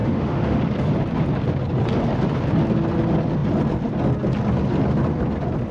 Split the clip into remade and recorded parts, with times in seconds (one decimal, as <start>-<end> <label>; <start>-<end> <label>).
0.0-0.6 remade; 0.6-5.7 recorded